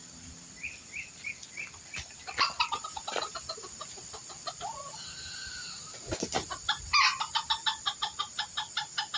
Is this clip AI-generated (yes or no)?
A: no